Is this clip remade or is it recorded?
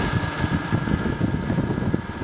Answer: recorded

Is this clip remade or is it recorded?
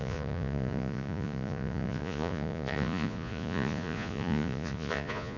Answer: remade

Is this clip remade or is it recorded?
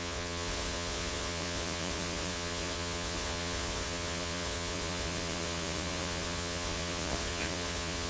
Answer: remade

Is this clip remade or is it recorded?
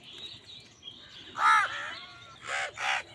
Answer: recorded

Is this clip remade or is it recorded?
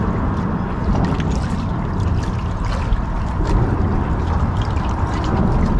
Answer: recorded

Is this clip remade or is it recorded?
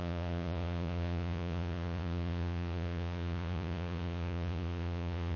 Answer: remade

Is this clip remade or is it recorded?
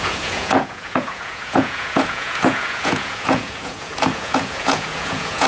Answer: remade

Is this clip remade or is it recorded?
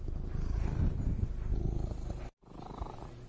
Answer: recorded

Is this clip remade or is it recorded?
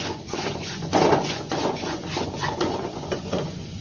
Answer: remade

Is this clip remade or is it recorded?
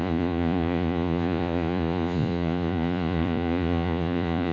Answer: remade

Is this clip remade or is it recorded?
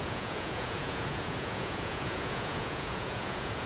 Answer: remade